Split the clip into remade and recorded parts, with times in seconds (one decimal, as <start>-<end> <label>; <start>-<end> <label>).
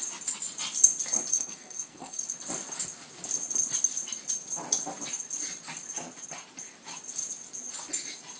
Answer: 0.0-1.3 recorded; 1.3-2.2 remade; 2.2-8.4 recorded